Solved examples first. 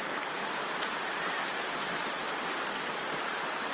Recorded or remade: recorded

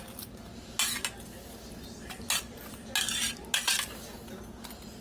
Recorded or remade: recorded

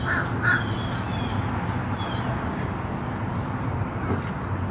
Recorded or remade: recorded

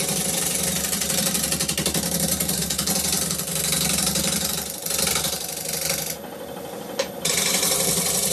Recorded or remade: recorded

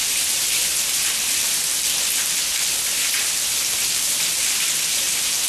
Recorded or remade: recorded